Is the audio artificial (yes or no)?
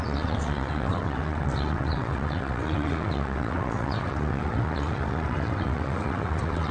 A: yes